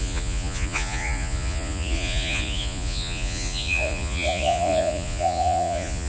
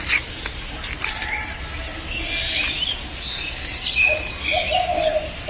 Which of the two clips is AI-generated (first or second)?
first